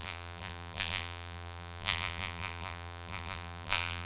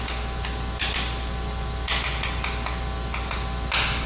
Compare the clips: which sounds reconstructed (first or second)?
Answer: first